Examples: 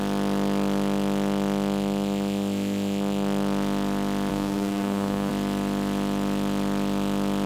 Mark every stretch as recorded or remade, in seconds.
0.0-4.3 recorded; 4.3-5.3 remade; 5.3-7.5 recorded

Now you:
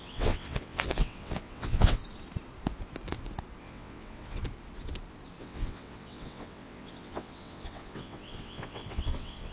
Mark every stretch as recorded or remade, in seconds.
0.0-2.0 remade; 2.0-3.6 recorded; 3.6-4.4 remade; 4.4-5.4 recorded; 5.4-9.5 remade

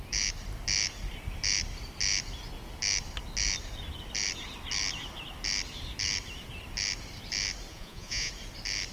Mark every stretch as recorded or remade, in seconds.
0.0-7.7 recorded; 7.7-8.3 remade; 8.3-8.9 recorded